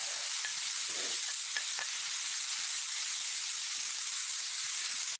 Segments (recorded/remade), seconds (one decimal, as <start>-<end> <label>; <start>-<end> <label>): 0.0-3.6 recorded; 3.6-5.2 remade